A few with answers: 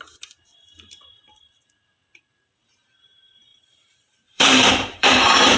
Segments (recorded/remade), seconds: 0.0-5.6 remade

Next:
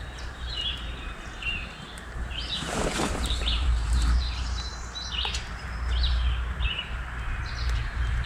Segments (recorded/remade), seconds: 0.0-4.7 remade; 4.7-5.5 recorded; 5.5-8.3 remade